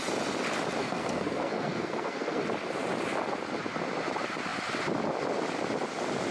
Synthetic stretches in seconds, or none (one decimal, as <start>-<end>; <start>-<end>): 0.8-2.4